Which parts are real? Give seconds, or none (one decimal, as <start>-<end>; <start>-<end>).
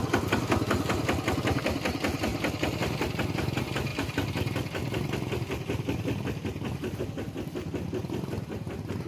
0.0-9.1